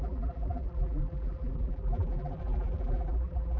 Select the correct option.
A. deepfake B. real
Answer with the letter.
A